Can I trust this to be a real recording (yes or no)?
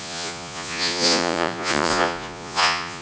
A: no